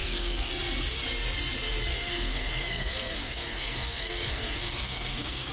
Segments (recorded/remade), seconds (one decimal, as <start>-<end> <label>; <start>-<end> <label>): 0.0-0.5 remade; 0.5-1.9 recorded; 1.9-5.5 remade